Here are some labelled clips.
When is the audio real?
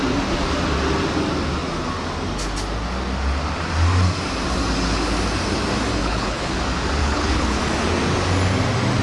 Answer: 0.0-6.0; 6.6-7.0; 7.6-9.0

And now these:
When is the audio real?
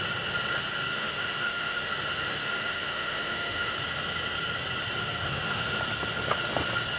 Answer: 0.0-0.9; 1.9-2.5; 3.7-5.0; 5.8-7.0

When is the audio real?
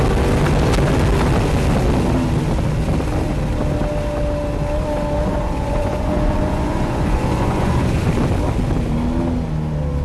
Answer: 0.0-5.3; 8.1-10.0